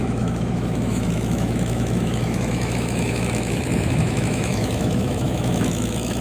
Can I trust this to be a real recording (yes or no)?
no